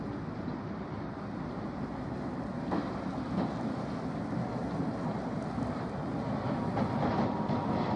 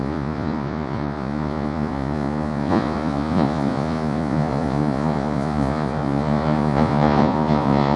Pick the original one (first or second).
first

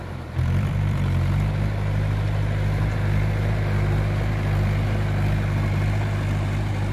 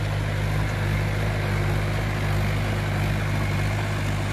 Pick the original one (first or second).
second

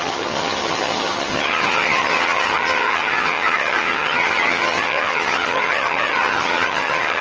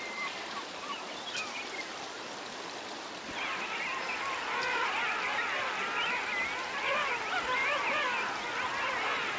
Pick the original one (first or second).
second